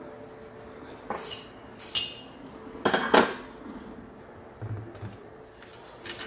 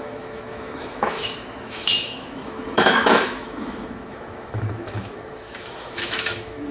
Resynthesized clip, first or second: second